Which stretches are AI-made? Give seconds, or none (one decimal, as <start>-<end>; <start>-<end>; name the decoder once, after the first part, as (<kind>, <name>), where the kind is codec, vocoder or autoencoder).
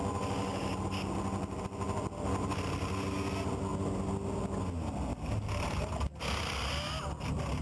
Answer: none